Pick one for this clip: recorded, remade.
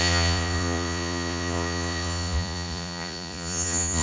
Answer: remade